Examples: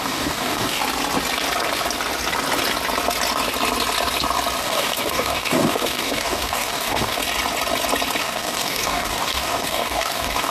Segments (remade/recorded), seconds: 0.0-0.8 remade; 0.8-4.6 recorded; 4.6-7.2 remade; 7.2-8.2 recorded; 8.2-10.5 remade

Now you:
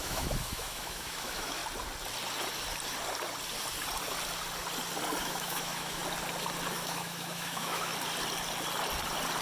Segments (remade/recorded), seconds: 0.0-1.6 remade; 1.6-5.2 recorded; 5.2-6.0 remade; 6.0-6.7 recorded; 6.7-7.9 remade; 7.9-9.4 recorded

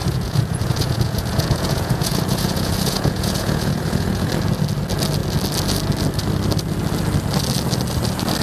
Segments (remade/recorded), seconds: 0.0-4.3 remade; 4.3-8.4 recorded

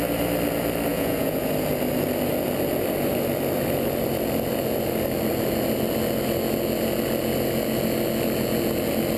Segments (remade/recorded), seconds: 0.0-0.9 recorded; 0.9-1.5 remade; 1.5-9.2 recorded